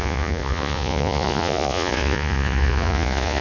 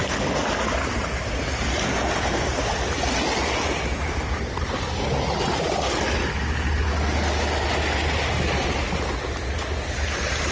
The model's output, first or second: first